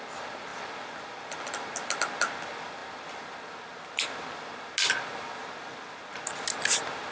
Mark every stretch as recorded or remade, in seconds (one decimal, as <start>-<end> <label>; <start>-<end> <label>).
0.0-7.1 recorded